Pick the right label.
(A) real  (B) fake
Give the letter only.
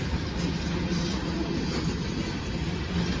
A